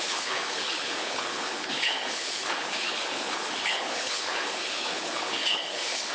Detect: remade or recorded remade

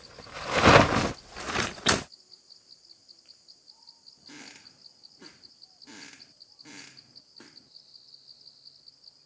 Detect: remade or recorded recorded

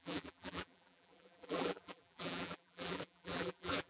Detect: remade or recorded remade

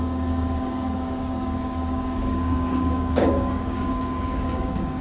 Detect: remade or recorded remade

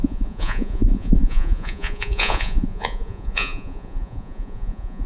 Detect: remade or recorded remade